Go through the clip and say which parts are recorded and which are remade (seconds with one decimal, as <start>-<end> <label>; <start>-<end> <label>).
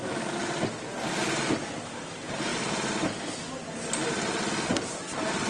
0.0-5.5 recorded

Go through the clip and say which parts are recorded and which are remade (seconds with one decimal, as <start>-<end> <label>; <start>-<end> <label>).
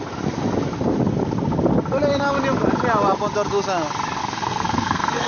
0.0-4.2 recorded; 4.2-5.3 remade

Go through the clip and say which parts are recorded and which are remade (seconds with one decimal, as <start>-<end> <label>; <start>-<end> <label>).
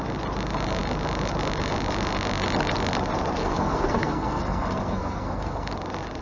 0.0-3.4 recorded; 3.4-5.7 remade; 5.7-6.2 recorded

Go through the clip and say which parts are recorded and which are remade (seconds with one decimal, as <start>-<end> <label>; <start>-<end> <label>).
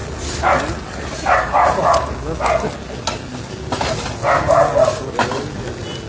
0.0-6.1 recorded